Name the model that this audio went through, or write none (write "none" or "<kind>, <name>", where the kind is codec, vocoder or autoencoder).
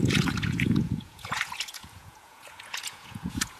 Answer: vocoder, Vocos